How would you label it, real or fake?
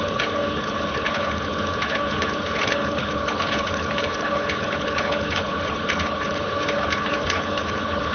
fake